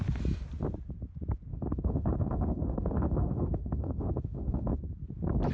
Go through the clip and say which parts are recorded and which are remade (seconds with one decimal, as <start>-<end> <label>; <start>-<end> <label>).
0.0-1.5 recorded; 1.5-4.8 remade; 4.8-5.5 recorded